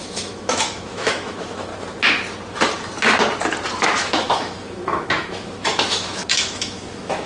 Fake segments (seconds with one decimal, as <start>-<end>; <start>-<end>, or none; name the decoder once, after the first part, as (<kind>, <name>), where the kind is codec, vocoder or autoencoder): 0.0-1.7 (autoencoder, DAC-VAE); 3.8-7.3